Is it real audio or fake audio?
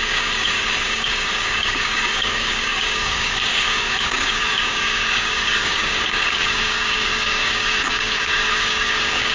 fake